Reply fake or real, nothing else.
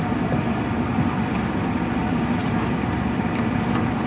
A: real